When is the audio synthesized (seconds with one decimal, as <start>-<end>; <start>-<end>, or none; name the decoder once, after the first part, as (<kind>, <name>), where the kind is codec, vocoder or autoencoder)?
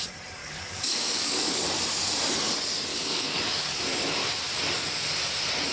0.4-1.6 (codec, DAC); 2.9-3.8